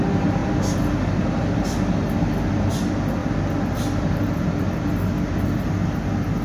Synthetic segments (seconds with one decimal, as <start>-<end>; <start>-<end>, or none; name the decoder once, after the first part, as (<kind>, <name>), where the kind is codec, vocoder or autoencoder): none